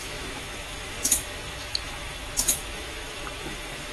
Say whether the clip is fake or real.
fake